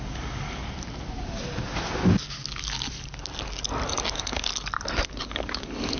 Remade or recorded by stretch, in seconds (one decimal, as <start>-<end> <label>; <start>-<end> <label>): 0.0-0.6 remade; 0.6-4.1 recorded; 4.1-4.5 remade; 4.5-5.2 recorded; 5.2-6.0 remade